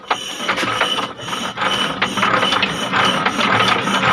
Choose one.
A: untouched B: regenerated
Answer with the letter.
A